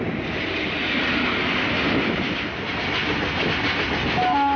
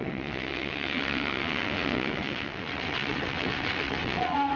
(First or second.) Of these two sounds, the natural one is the first